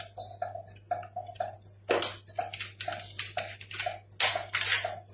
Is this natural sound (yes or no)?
yes